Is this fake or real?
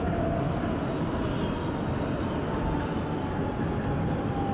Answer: real